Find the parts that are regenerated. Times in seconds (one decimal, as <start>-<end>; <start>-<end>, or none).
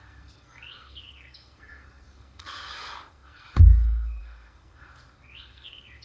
0.0-6.0